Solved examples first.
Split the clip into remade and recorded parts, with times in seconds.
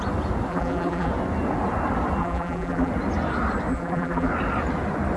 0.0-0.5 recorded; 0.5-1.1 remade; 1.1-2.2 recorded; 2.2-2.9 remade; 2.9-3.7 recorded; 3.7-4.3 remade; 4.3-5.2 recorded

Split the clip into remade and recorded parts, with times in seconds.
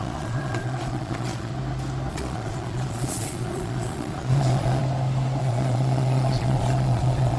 0.0-1.5 remade; 1.5-2.1 recorded; 2.1-4.8 remade; 4.8-5.4 recorded; 5.4-7.4 remade